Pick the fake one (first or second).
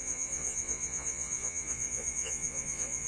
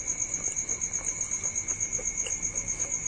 first